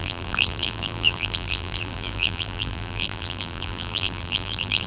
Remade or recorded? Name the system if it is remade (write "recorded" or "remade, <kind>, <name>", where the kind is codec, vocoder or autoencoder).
remade, vocoder, BigVGAN v2